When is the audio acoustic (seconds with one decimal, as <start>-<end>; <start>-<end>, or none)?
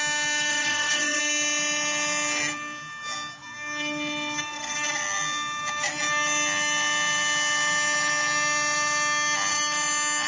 0.0-0.5; 1.2-10.3